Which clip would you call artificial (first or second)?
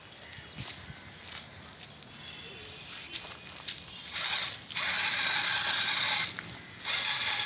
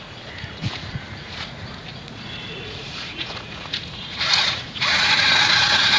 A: second